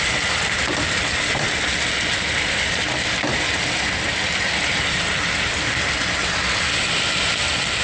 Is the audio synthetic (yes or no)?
yes